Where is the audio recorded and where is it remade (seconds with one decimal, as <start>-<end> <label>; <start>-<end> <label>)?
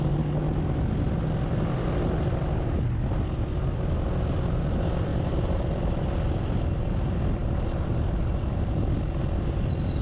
0.0-5.1 recorded; 5.1-6.5 remade; 6.5-7.4 recorded; 7.4-9.0 remade; 9.0-10.0 recorded